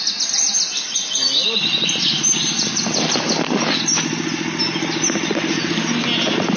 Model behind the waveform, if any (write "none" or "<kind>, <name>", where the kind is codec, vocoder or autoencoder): none